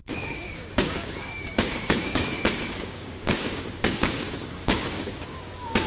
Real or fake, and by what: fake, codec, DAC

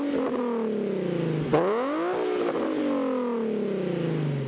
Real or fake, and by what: real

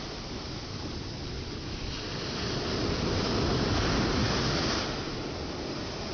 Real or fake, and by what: real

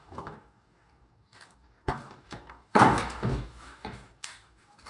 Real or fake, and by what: fake, codec, DAC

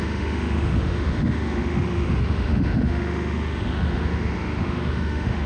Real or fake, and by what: fake, autoencoder, DAC-VAE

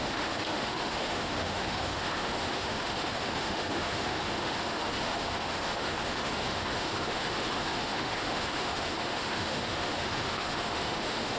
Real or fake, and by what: fake, autoencoder, DAC-VAE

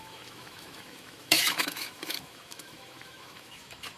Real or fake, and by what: fake, autoencoder, DAC-VAE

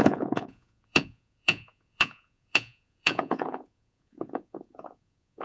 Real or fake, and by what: fake, vocoder, Vocos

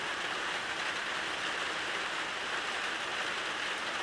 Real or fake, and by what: real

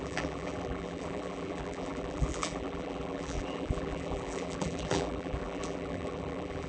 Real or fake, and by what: fake, vocoder, BigVGAN v2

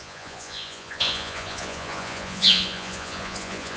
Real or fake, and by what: fake, vocoder, Vocos